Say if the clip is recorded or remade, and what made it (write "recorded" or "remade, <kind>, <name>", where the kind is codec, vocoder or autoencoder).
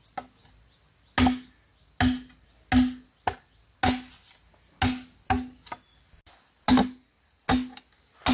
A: recorded